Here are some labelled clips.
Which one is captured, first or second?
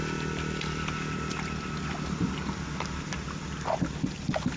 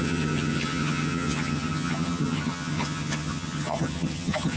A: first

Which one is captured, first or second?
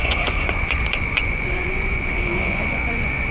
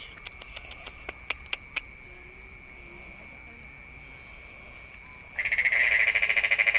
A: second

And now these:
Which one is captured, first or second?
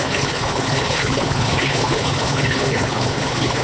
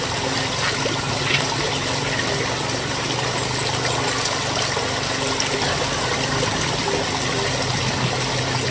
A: second